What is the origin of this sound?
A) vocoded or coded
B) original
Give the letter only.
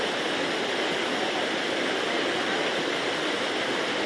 A